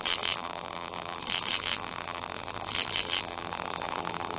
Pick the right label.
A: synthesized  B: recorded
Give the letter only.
A